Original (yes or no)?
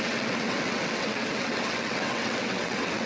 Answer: no